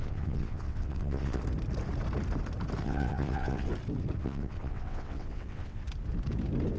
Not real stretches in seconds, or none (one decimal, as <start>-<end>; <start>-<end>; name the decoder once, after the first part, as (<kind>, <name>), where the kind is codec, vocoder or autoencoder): 0.0-1.4 (vocoder, WaveNeXt); 2.8-3.7; 4.2-5.8